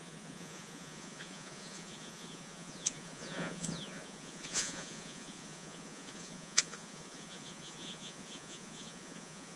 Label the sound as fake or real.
fake